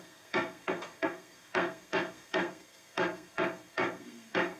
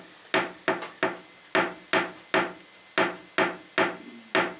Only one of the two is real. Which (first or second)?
second